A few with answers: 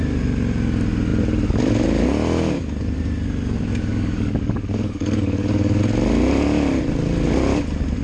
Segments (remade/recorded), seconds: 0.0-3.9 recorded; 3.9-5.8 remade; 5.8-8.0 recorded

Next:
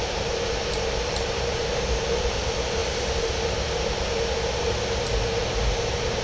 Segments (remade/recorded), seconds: 0.0-2.8 remade; 2.8-5.4 recorded; 5.4-6.2 remade

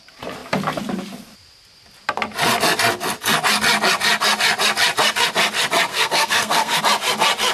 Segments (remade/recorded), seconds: 0.0-5.9 recorded; 5.9-6.8 remade; 6.8-7.5 recorded

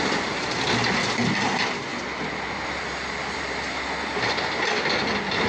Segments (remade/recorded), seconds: 0.0-5.5 recorded

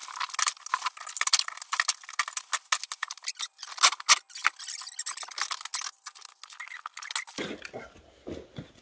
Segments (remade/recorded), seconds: 0.0-8.8 recorded

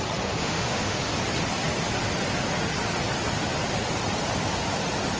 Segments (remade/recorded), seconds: 0.0-0.4 recorded; 0.4-1.0 remade; 1.0-5.2 recorded

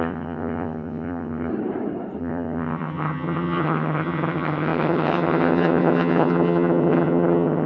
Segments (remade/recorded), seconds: 0.0-1.5 remade; 1.5-2.2 recorded; 2.2-7.7 remade